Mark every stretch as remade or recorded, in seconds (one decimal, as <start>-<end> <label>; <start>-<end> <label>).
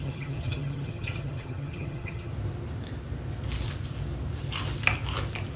0.0-2.3 remade; 2.3-5.6 recorded